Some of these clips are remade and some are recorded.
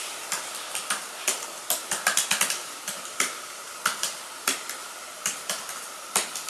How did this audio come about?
remade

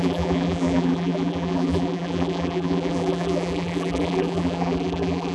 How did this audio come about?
remade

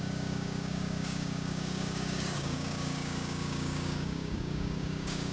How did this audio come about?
remade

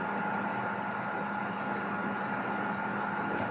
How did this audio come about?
recorded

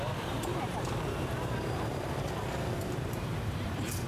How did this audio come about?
remade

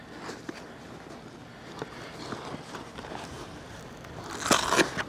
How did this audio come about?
recorded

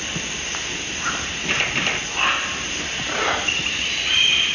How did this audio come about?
recorded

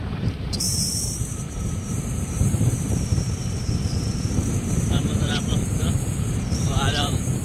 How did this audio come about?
remade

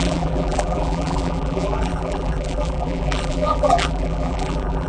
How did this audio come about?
remade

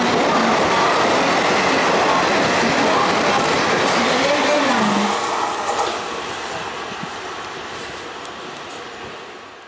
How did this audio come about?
recorded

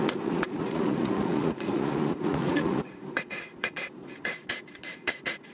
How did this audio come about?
remade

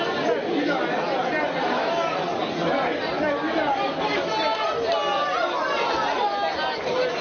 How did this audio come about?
recorded